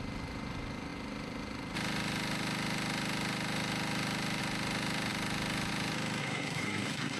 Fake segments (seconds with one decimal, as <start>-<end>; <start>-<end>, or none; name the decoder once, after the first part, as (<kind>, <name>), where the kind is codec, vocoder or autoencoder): 6.2-7.2 (codec, SNAC)